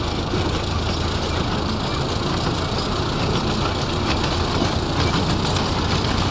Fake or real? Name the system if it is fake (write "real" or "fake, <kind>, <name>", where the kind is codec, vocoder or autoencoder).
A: real